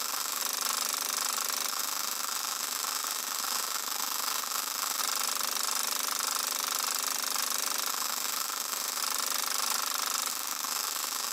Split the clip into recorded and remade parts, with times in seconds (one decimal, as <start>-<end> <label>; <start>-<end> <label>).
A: 0.0-0.4 remade; 0.4-1.7 recorded; 1.7-5.0 remade; 5.0-7.9 recorded; 7.9-9.0 remade; 9.0-10.3 recorded; 10.3-11.3 remade